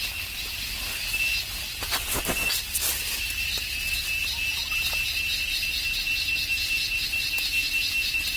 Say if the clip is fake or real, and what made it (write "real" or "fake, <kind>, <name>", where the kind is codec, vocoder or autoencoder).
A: real